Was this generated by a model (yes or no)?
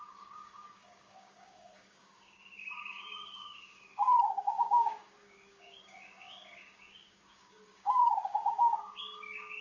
yes